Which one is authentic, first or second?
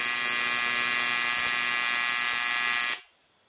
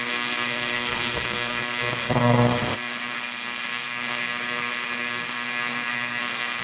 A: first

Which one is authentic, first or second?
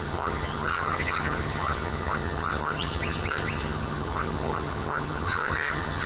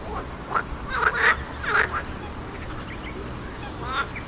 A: second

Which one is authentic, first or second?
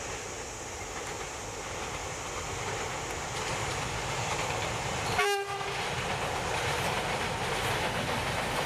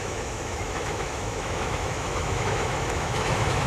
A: first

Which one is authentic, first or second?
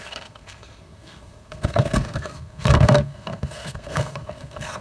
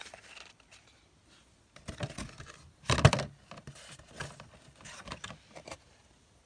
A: second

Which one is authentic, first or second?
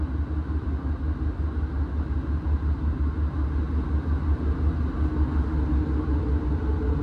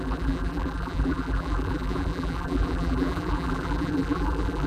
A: first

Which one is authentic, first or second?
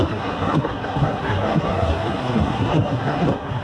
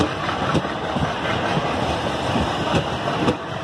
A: second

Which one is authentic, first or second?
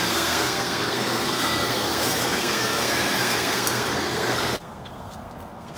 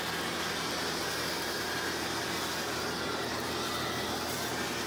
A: second